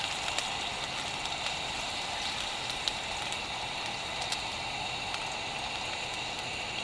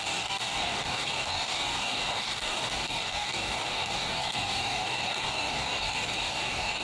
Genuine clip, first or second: first